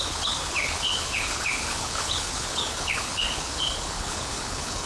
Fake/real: fake